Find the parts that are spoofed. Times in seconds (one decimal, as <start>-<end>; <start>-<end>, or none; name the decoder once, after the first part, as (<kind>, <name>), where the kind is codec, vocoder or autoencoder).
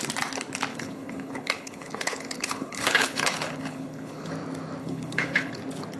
0.7-4.3 (codec, HILCodec); 4.8-5.5